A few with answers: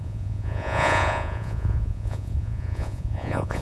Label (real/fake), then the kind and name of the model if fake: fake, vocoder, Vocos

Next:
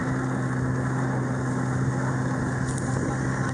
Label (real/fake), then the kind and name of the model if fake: real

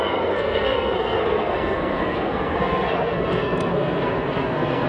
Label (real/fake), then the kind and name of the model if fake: fake, codec, SNAC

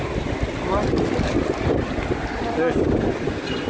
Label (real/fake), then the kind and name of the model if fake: real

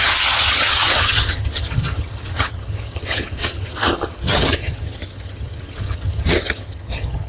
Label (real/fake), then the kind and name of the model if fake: fake, vocoder, HiFi-GAN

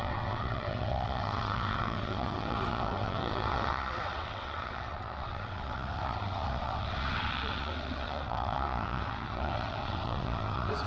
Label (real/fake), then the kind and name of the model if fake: fake, vocoder, WaveNeXt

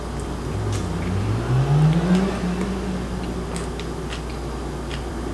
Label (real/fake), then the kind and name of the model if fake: real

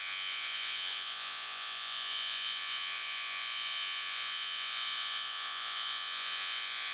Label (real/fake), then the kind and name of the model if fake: fake, vocoder, Vocos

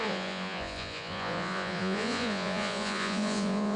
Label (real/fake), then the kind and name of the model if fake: fake, vocoder, Vocos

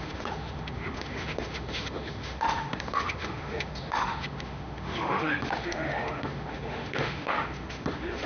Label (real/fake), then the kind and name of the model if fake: fake, autoencoder, DAC-VAE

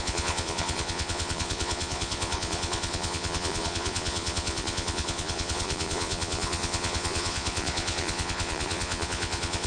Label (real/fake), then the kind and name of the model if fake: fake, vocoder, Vocos